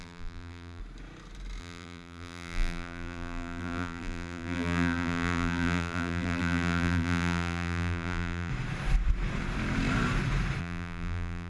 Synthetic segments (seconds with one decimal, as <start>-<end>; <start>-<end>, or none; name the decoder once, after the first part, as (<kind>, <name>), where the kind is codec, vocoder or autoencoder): 0.0-0.8 (vocoder, BigVGAN v2); 1.6-8.5; 10.6-11.5